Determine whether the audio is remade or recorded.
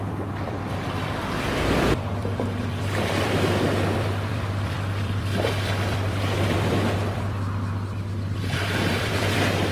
remade